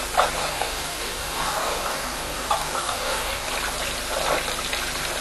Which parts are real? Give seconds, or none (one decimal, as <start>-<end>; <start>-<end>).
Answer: 0.0-0.4; 3.5-5.2

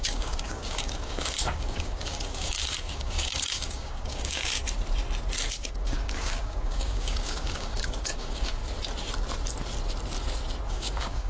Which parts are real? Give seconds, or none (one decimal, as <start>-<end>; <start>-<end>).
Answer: 4.5-5.5; 8.6-10.7